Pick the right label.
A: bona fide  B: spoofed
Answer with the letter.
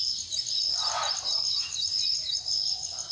A